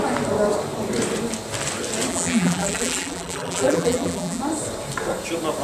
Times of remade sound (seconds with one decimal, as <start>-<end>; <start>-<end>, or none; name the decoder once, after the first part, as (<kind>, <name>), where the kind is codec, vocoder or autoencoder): 2.1-4.4 (vocoder, BigVGAN v2)